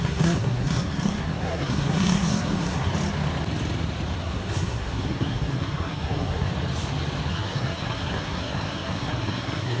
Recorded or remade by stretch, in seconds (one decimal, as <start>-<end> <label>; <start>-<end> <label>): 0.0-2.9 remade; 2.9-4.2 recorded; 4.2-6.5 remade; 6.5-7.3 recorded; 7.3-9.8 remade